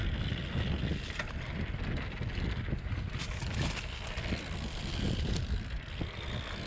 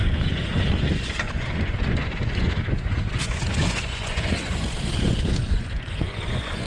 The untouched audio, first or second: first